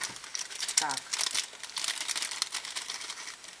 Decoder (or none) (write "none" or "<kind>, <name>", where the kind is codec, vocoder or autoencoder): none